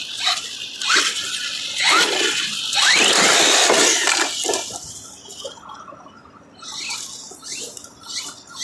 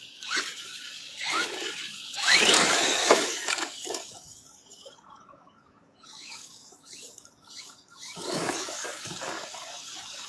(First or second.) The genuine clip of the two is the first